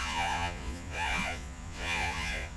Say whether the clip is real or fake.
fake